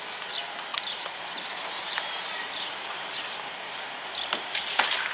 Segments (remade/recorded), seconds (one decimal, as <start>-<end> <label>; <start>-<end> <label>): 0.0-0.7 recorded; 0.7-3.8 remade; 3.8-5.1 recorded